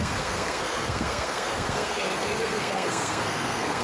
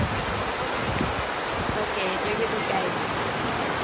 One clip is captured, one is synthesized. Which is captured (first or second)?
second